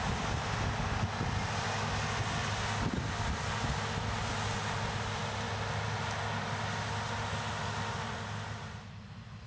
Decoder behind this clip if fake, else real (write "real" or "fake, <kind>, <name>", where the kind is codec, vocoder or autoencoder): real